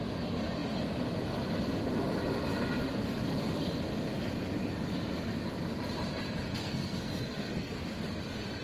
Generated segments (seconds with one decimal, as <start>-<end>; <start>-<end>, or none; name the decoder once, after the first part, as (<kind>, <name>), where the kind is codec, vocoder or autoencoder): 6.6-7.7 (codec, SNAC)